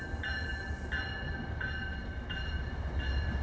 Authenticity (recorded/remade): recorded